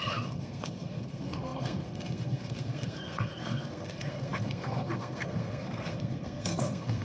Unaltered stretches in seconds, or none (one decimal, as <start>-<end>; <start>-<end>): none